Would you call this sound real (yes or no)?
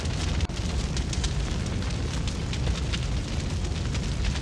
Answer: yes